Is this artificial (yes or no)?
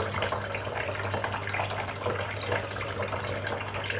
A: no